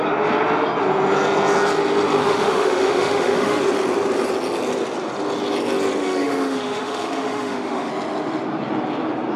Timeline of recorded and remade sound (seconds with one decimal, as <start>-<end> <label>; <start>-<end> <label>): 0.0-2.2 recorded; 2.2-3.6 remade; 3.6-6.0 recorded; 6.0-7.9 remade; 7.9-9.4 recorded